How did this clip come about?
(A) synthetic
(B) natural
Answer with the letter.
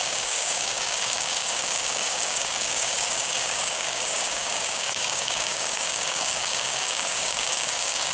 A